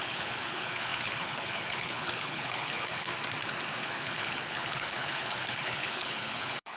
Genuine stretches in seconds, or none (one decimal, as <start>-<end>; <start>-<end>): 3.1-3.8